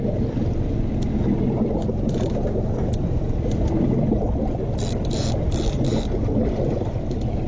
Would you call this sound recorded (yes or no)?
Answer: no